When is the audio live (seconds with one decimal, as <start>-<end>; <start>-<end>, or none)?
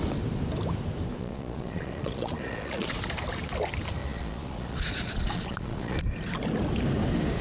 0.0-1.2; 3.0-4.0; 6.0-7.4